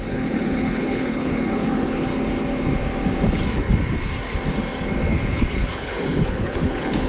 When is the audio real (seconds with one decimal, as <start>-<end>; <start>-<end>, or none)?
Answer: 2.1-5.1